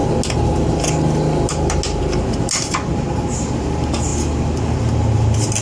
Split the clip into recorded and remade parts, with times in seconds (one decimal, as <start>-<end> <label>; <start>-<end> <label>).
0.0-5.6 recorded